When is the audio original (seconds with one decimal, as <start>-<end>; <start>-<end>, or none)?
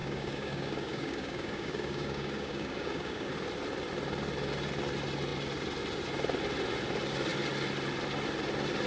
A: 3.3-8.9